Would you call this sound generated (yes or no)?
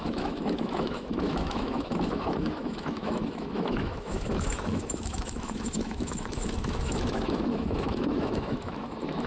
yes